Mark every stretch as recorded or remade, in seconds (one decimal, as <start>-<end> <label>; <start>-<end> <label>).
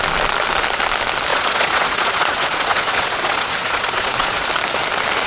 0.0-1.3 recorded; 1.3-4.5 remade; 4.5-5.3 recorded